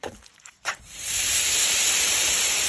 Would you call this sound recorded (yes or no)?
no